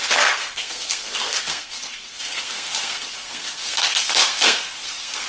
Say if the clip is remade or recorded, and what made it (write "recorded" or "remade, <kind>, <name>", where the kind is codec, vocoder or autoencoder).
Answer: remade, codec, SNAC